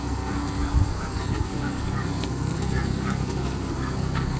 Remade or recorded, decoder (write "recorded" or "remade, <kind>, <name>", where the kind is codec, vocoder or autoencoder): remade, codec, SNAC